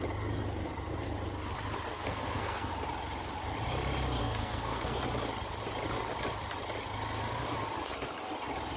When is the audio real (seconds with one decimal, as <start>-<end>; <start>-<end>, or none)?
0.0-1.9; 2.7-4.2; 5.0-8.8